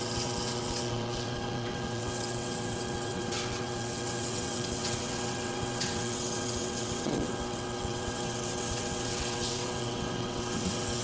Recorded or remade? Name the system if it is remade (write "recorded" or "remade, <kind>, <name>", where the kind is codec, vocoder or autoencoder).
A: remade, vocoder, WaveNeXt